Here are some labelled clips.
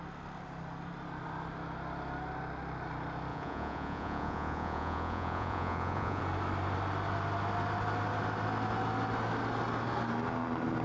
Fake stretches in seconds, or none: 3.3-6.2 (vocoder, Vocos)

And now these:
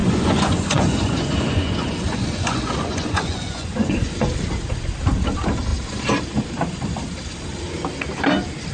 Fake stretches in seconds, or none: 0.0-4.3 (vocoder, Vocos)

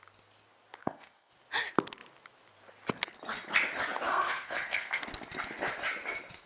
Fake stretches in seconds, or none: 0.8-1.3 (codec, SNAC); 4.1-5.0

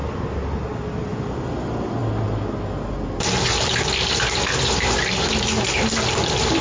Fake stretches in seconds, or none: none

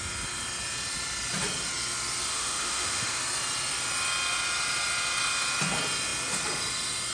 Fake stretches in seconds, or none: 2.3-3.2 (autoencoder, DAC-VAE)